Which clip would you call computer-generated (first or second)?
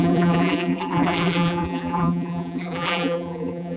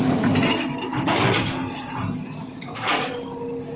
first